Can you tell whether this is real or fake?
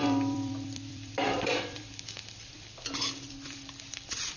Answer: fake